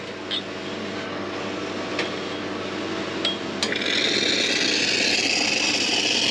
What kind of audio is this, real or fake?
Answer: real